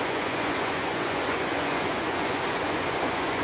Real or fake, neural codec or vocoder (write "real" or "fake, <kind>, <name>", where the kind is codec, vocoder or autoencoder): fake, vocoder, Vocos